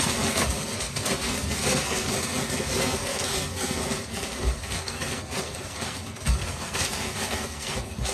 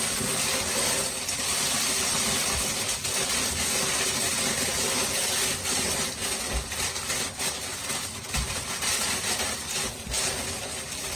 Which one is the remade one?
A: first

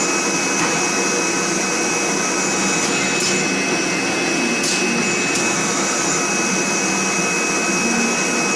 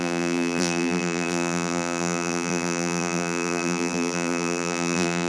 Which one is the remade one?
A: second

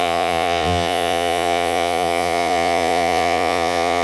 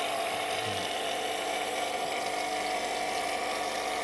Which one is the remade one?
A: first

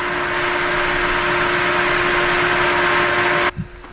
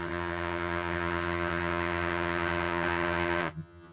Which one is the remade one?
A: second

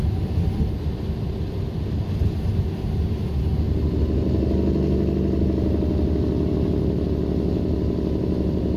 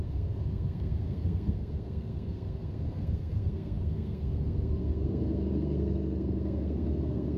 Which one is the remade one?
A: second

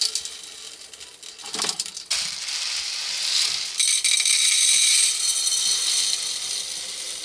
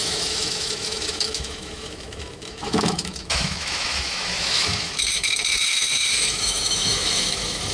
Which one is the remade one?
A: second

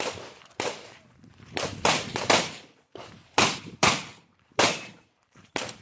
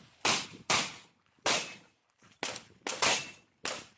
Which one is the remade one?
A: first